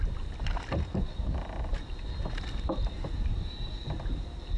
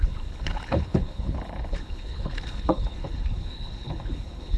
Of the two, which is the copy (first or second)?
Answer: second